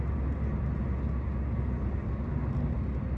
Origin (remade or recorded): recorded